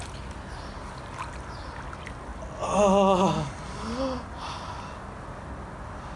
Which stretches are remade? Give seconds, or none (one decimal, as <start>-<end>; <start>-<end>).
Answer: none